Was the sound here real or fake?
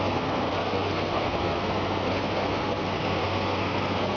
fake